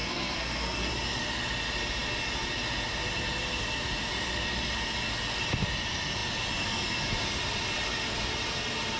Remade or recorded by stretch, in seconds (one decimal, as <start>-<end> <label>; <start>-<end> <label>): 0.0-0.9 remade; 0.9-9.0 recorded